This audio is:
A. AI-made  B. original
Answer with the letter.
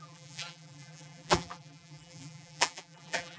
A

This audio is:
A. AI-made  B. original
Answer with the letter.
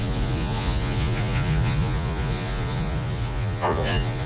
A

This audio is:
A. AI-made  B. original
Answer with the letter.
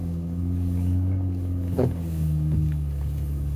A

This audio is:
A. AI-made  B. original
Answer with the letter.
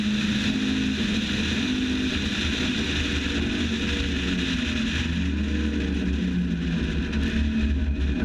B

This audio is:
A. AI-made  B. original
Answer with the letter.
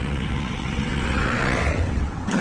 A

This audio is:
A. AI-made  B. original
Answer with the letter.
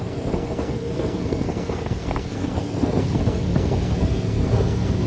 A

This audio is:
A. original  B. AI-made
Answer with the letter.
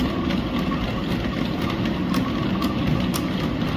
A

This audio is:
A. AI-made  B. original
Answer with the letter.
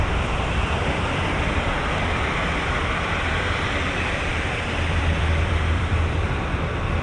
A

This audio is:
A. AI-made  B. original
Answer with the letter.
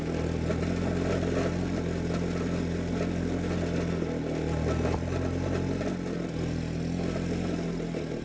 B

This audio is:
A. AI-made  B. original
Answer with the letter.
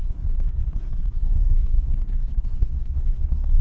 A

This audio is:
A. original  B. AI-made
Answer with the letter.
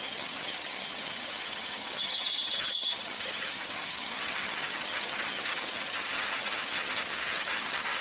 B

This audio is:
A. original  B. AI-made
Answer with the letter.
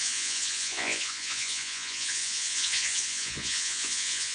B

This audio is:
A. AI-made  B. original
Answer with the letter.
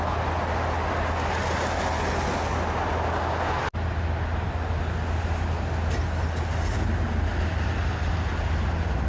B